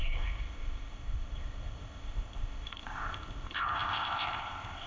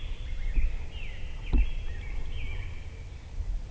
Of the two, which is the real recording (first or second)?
second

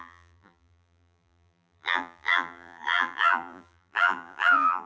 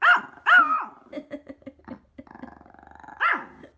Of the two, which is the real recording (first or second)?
second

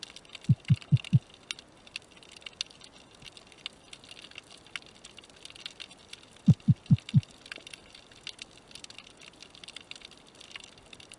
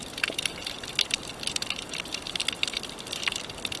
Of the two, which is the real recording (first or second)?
first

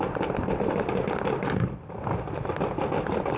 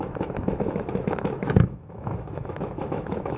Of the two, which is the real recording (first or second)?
first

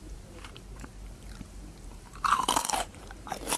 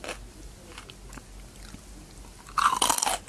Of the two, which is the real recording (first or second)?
second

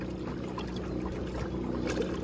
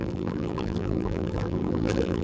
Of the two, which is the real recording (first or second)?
first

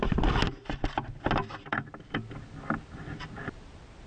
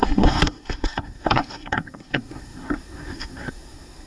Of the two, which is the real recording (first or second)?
first